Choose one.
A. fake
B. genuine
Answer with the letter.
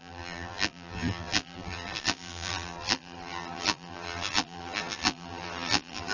A